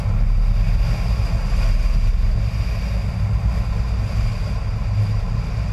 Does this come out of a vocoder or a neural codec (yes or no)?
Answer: no